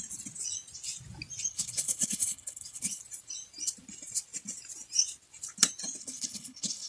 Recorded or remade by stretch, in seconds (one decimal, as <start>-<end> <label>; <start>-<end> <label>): 0.0-1.5 recorded; 1.5-3.0 remade; 3.0-6.0 recorded; 6.0-6.9 remade